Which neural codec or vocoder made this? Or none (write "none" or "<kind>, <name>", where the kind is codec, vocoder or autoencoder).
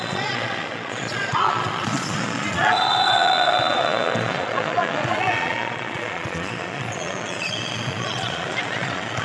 vocoder, Vocos